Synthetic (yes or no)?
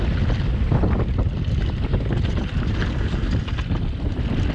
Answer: no